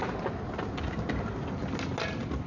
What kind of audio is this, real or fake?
real